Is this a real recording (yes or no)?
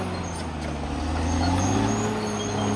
yes